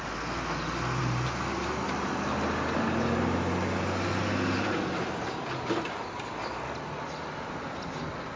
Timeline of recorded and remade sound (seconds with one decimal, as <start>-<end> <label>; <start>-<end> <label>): 0.0-8.4 recorded